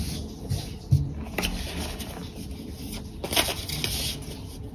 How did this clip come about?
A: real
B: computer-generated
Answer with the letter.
A